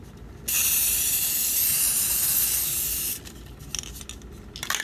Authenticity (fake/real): real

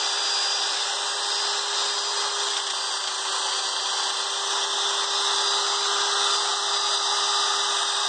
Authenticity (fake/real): real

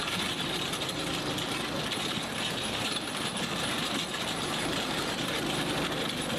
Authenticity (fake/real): fake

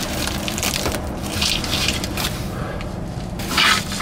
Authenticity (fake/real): fake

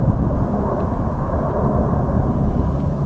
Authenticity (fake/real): real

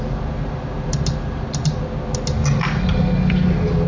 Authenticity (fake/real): real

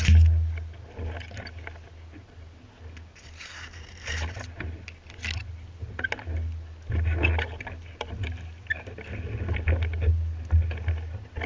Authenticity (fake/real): real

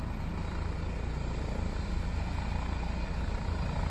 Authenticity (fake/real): real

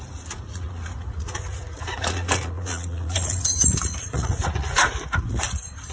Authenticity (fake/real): fake